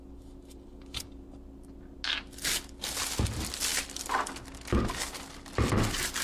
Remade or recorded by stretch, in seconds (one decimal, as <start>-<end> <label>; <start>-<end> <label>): 0.0-6.2 recorded